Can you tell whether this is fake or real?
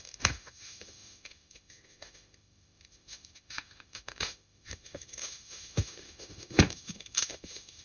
fake